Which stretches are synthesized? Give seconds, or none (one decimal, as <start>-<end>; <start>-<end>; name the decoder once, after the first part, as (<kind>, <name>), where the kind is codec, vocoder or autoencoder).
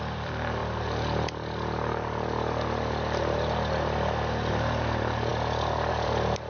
0.0-0.6 (vocoder, BigVGAN v2); 4.5-5.3; 5.9-6.5